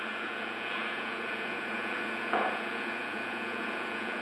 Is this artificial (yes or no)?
yes